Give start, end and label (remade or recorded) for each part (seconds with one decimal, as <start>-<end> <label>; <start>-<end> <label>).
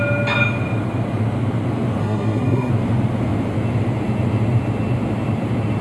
0.0-2.0 recorded; 2.0-2.7 remade; 2.7-5.8 recorded